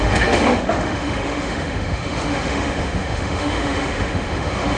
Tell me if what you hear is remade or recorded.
remade